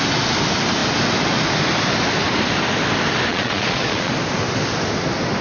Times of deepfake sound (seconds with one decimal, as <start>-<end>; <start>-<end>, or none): 3.3-4.1